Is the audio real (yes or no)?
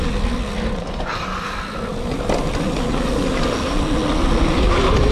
yes